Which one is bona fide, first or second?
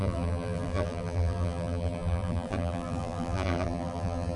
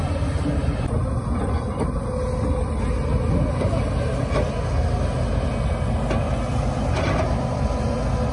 second